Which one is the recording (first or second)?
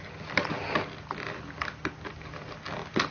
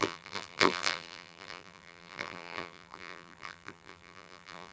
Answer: first